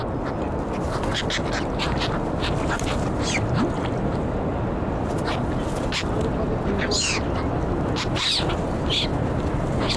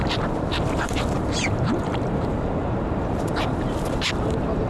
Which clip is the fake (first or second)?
second